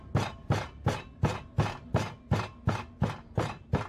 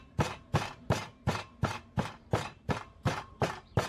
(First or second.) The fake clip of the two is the second